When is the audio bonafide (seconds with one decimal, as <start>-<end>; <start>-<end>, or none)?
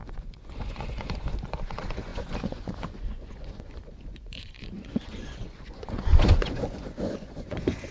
none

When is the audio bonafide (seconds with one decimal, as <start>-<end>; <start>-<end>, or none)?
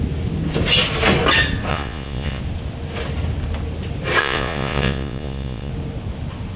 0.0-1.7; 2.4-4.2; 5.7-6.6